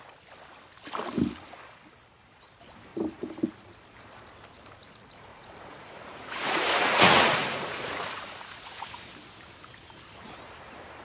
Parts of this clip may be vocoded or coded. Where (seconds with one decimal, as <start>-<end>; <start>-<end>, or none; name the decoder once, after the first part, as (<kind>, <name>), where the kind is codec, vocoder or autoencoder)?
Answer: 5.3-9.1 (vocoder, Vocos)